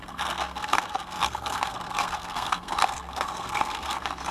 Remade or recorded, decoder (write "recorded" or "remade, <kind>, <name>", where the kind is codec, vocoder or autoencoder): remade, codec, SNAC